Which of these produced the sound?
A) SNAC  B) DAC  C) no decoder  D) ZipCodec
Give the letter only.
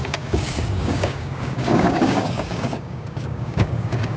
B